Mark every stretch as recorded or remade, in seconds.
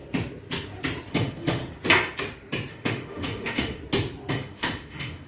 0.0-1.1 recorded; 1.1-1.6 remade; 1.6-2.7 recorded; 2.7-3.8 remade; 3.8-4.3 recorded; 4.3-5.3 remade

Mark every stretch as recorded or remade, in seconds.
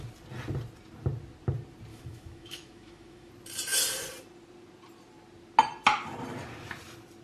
0.0-1.9 recorded; 1.9-3.3 remade; 3.3-7.2 recorded